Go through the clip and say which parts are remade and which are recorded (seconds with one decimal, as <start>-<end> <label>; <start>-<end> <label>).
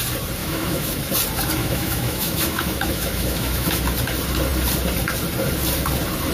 0.0-0.4 recorded; 0.4-1.0 remade; 1.0-1.6 recorded; 1.6-3.8 remade; 3.8-6.3 recorded